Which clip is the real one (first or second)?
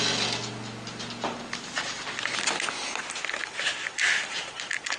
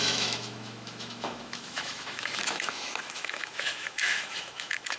first